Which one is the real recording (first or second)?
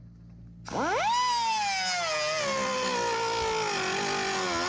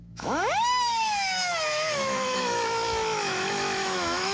first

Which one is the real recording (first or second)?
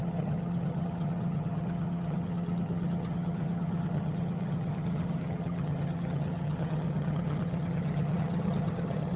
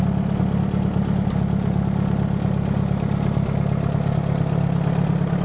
second